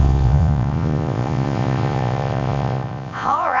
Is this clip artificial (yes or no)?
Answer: yes